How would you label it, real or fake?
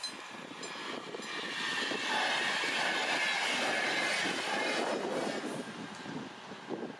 real